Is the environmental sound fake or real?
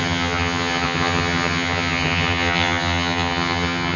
fake